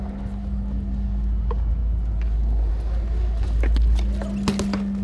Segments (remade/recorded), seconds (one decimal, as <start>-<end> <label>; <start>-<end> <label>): 0.0-5.0 recorded

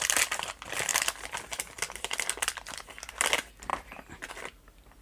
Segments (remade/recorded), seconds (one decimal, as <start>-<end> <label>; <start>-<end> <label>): 0.0-0.9 remade; 0.9-2.0 recorded; 2.0-3.7 remade; 3.7-4.3 recorded; 4.3-5.0 remade